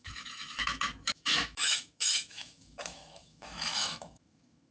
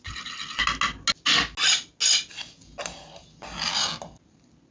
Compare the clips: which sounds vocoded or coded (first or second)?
first